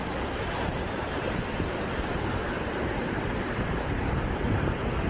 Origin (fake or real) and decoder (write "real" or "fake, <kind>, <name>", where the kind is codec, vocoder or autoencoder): fake, vocoder, BigVGAN v2